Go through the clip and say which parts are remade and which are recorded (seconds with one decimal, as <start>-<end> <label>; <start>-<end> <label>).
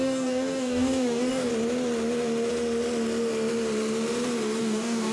0.0-1.5 remade; 1.5-4.6 recorded; 4.6-5.1 remade